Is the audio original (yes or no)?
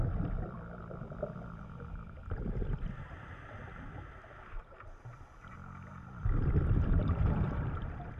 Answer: no